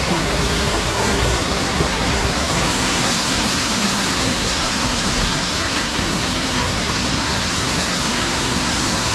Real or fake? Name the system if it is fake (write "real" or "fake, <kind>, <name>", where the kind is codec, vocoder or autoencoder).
fake, codec, SNAC